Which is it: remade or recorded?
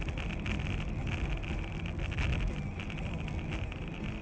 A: recorded